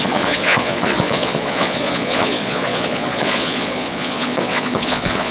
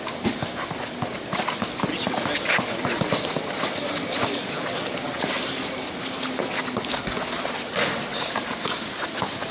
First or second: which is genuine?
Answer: second